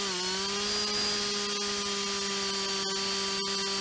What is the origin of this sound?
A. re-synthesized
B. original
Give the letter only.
B